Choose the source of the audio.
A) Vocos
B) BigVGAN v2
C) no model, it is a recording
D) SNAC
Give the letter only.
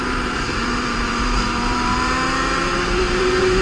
B